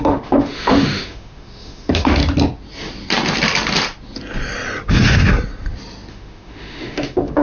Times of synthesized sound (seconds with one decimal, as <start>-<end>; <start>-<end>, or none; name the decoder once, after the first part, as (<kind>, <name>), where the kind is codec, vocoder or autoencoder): 0.0-2.2 (autoencoder, DAC-VAE); 6.1-7.4